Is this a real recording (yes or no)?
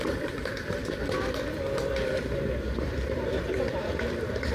no